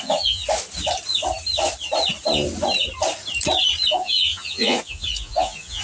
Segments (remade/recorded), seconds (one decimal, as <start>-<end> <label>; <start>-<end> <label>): 0.0-0.4 remade; 0.4-3.9 recorded; 3.9-5.8 remade